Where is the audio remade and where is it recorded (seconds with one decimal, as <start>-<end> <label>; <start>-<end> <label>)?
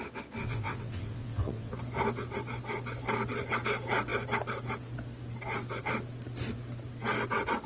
0.0-0.4 recorded; 0.4-1.7 remade; 1.7-7.7 recorded